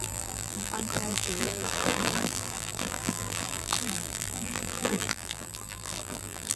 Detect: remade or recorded remade